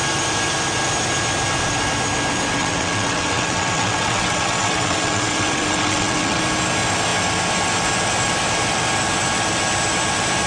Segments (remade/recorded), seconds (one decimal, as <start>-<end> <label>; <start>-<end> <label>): 0.0-2.6 recorded; 2.6-6.4 remade; 6.4-10.5 recorded